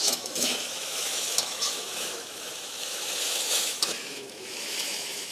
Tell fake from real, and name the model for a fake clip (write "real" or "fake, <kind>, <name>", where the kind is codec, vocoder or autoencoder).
fake, autoencoder, DAC-VAE